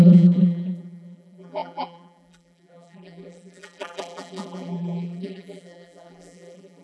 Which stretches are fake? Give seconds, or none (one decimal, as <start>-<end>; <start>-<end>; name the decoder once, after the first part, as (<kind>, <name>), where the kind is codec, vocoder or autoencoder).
0.0-6.8 (vocoder, BigVGAN v2)